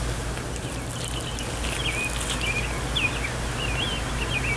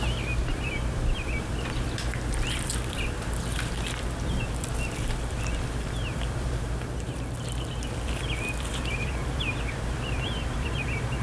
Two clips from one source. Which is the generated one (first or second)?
second